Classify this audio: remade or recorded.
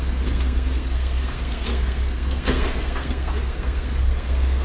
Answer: remade